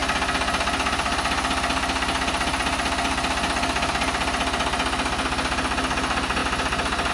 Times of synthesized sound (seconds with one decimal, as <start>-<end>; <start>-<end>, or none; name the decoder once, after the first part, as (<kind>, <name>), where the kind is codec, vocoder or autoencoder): none